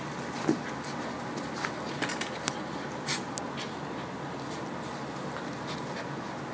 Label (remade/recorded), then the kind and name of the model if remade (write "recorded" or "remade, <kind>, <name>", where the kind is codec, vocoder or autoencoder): recorded